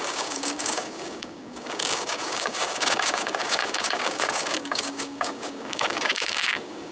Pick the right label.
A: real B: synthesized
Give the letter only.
B